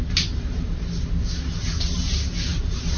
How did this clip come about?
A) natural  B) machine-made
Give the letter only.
A